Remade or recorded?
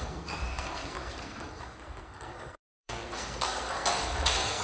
remade